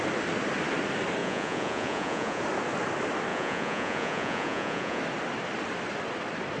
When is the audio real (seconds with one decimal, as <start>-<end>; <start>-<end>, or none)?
0.0-1.2; 2.4-3.3; 5.0-6.6